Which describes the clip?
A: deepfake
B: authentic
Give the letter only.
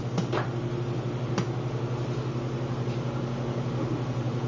B